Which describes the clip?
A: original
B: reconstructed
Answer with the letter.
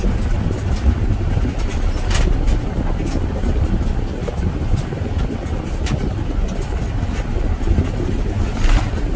A